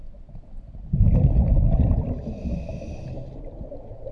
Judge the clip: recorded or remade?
recorded